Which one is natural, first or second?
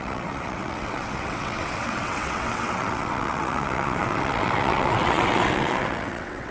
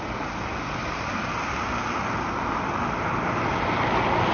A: second